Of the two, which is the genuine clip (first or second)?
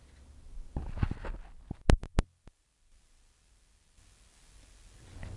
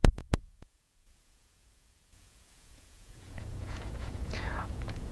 first